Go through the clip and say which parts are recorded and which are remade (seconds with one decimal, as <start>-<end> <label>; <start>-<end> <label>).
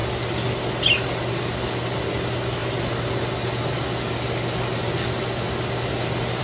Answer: 0.0-6.4 recorded